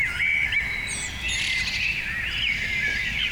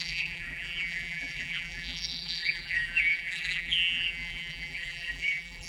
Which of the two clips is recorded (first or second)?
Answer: first